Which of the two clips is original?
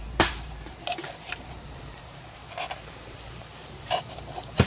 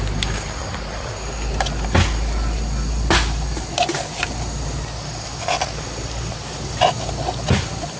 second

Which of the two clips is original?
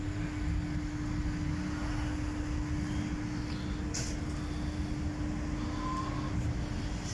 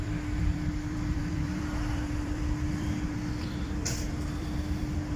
first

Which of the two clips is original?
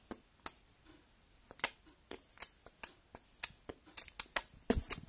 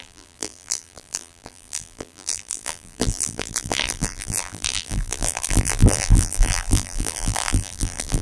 first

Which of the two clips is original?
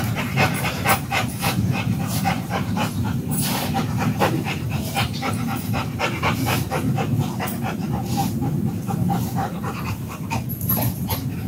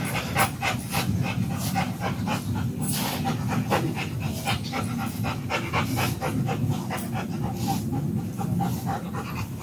second